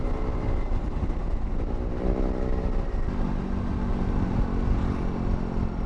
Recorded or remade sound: recorded